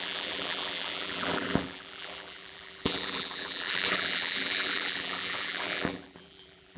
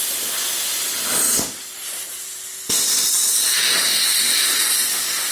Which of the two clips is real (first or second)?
second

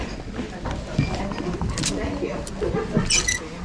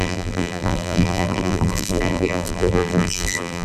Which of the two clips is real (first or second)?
first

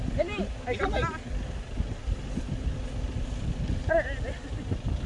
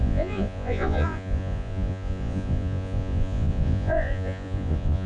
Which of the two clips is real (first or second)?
first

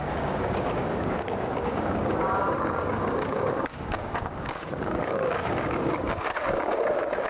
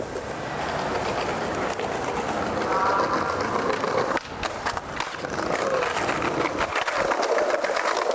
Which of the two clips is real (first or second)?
second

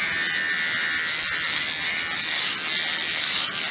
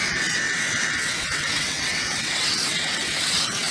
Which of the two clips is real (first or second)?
first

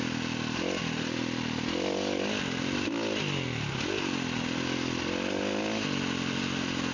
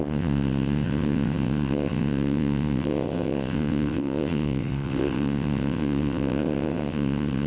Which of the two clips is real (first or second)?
first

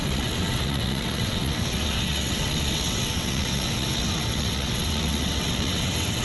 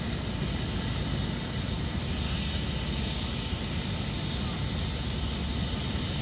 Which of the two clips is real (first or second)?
second